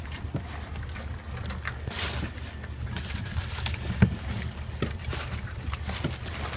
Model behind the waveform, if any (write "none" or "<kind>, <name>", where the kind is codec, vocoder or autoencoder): none